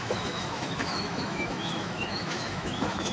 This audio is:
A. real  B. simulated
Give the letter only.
B